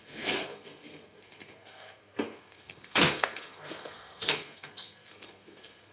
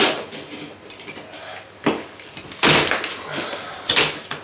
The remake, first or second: first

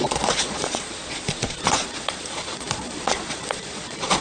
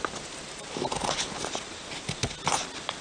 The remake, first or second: first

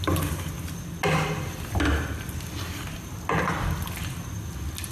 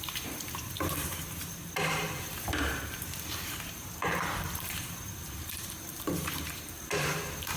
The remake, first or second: second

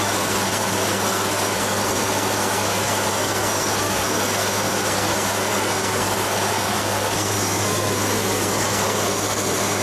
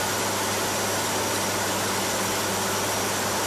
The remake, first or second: first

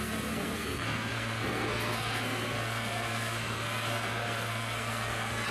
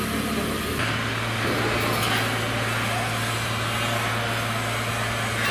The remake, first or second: first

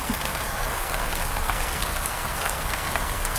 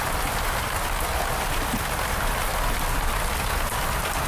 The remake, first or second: first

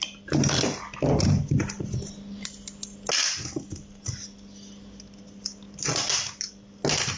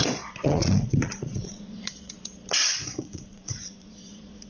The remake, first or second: second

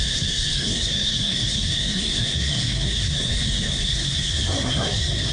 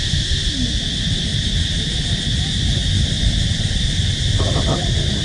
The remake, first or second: first